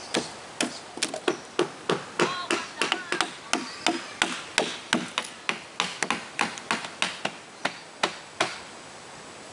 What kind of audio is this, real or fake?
real